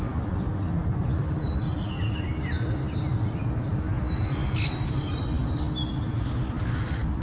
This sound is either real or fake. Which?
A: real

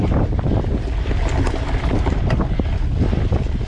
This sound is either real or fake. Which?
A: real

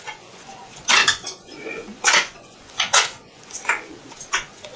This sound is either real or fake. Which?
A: fake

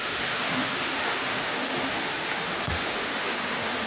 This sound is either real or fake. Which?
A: fake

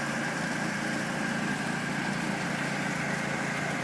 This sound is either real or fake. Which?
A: real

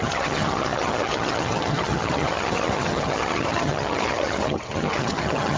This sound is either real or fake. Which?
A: fake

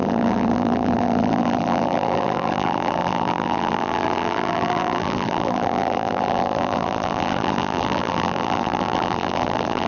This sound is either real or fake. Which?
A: fake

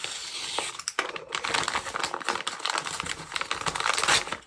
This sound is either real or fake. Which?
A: real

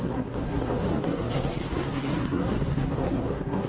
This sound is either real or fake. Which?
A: fake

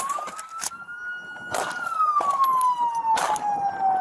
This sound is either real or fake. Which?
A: real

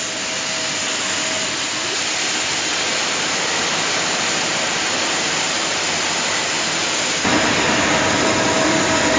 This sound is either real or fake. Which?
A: real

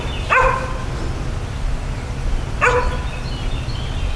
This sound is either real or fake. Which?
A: real